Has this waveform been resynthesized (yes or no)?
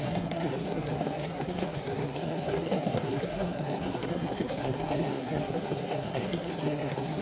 yes